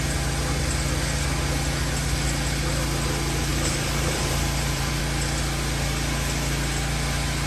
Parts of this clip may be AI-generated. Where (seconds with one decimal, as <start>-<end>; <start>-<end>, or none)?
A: 3.5-5.0